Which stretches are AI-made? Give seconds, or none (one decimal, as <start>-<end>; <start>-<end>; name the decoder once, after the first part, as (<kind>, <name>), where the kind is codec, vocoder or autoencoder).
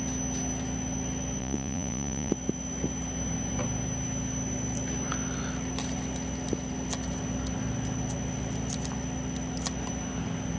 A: 1.4-2.3 (vocoder, Vocos)